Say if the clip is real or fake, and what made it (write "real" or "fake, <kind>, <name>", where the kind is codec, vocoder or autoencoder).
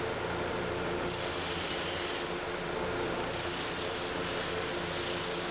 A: real